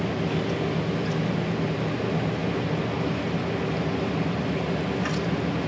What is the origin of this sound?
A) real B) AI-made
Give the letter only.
A